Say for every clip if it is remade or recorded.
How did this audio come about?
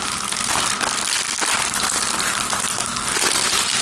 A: recorded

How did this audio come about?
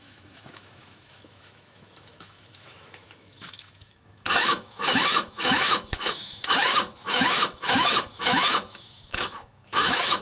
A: remade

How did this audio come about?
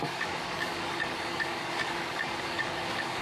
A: remade